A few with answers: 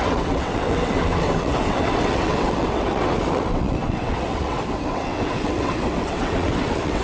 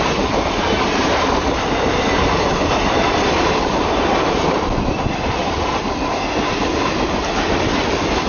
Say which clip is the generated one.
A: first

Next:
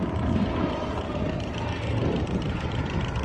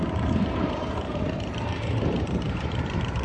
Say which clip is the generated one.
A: second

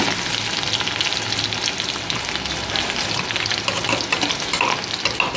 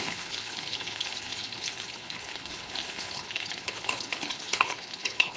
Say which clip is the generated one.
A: second